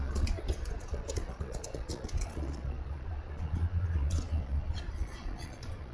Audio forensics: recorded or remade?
remade